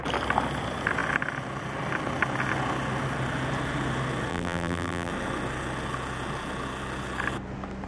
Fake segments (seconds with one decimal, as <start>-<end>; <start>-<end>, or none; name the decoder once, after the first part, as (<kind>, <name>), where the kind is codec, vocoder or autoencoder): 4.3-5.1 (vocoder, BigVGAN v2)